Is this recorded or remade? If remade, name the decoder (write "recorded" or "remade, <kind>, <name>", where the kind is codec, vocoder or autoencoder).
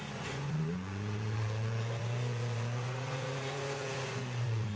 remade, vocoder, Vocos